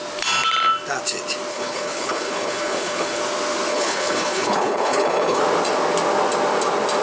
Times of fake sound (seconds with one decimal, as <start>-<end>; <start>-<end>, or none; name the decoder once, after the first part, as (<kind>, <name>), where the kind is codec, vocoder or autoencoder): 1.5-3.2 (codec, HILCodec); 3.7-5.4